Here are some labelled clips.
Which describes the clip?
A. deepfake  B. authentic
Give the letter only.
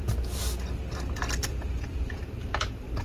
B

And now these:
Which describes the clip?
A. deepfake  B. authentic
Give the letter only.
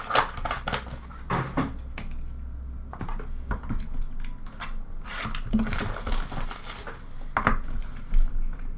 B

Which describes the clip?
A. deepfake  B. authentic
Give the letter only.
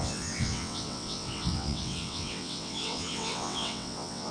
A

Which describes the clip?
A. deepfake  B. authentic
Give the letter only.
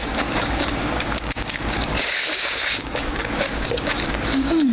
A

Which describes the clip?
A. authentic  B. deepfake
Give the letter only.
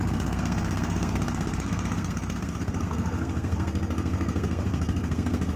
B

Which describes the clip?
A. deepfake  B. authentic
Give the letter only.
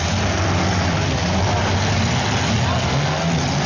B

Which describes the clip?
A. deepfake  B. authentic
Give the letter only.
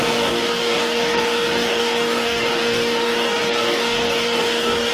A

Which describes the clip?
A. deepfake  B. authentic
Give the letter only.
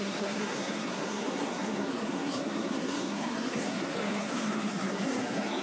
A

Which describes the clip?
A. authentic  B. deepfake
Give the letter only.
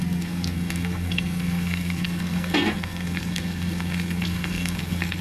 B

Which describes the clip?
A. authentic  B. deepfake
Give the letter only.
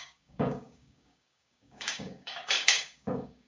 B